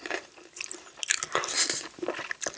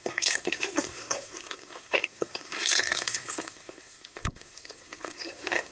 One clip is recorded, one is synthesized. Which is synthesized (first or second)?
second